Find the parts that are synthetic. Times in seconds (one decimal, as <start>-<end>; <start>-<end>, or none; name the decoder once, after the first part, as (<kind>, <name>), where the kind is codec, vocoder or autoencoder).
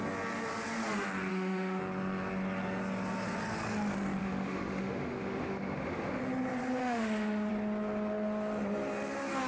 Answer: 1.3-1.8 (autoencoder, DAC-VAE); 4.2-6.2; 6.8-7.5